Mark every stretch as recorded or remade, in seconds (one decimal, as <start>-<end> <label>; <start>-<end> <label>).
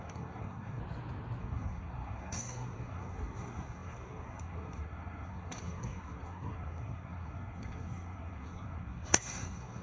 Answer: 0.0-0.8 remade; 0.8-1.4 recorded; 1.4-9.8 remade